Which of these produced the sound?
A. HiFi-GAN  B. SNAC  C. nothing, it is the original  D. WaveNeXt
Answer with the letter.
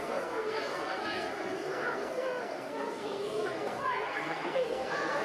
B